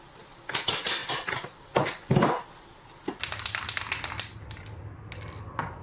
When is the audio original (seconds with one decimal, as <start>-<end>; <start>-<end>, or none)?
0.0-5.8